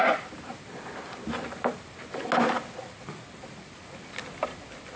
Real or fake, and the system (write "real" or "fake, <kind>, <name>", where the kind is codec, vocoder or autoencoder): real